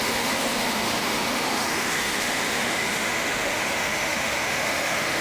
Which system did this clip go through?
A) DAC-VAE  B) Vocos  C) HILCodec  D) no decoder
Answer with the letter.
A